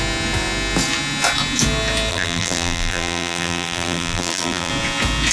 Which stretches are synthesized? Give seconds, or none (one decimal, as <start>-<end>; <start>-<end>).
2.1-4.7